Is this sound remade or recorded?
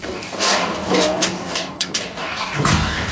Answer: remade